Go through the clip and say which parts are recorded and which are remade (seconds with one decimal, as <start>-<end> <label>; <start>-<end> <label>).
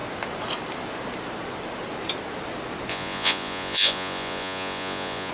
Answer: 0.0-2.9 recorded; 2.9-5.3 remade